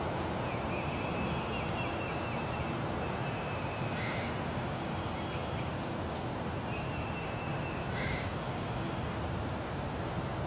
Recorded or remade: recorded